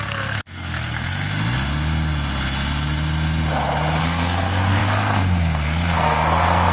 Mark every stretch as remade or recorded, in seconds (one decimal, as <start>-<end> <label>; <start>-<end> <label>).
0.0-1.3 remade; 1.3-4.0 recorded; 4.0-6.7 remade